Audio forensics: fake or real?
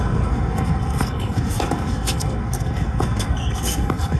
fake